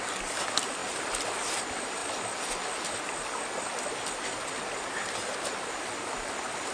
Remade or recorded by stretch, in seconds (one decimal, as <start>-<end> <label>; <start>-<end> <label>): 0.0-6.7 recorded